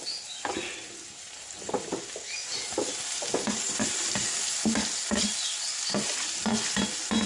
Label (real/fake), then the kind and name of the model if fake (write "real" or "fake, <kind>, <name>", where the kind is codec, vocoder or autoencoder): real